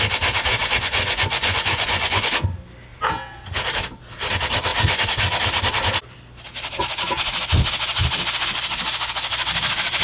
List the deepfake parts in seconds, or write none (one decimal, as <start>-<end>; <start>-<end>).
0.6-2.3